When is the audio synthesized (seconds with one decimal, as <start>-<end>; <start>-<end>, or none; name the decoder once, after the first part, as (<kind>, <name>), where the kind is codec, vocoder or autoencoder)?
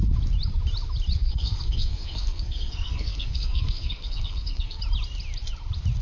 1.2-4.8 (codec, SNAC)